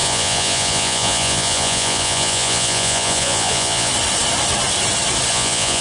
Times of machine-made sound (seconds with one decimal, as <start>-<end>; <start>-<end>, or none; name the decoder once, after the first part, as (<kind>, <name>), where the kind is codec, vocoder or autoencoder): 0.0-3.9 (vocoder, Vocos); 5.3-5.8